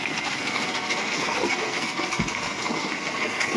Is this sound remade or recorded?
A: remade